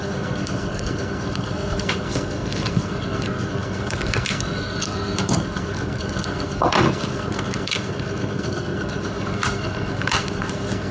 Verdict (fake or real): fake